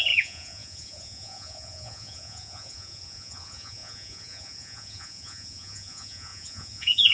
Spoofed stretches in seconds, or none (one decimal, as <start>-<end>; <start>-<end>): 0.0-7.1